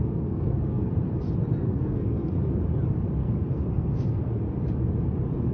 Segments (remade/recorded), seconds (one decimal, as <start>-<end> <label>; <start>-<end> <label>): 0.0-0.9 remade; 0.9-1.6 recorded; 1.6-2.3 remade; 2.3-3.2 recorded; 3.2-4.4 remade; 4.4-5.5 recorded